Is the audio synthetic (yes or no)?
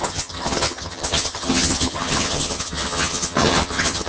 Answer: yes